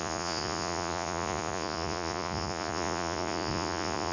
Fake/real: fake